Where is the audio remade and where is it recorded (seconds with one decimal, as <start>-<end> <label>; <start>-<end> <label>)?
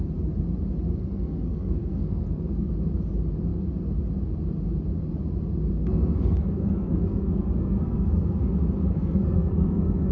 0.0-0.9 recorded; 0.9-2.7 remade; 2.7-5.8 recorded; 5.8-8.4 remade; 8.4-8.9 recorded; 8.9-10.1 remade